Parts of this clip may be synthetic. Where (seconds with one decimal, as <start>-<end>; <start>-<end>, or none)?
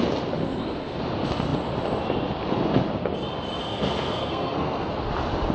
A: 0.4-1.0; 3.6-4.9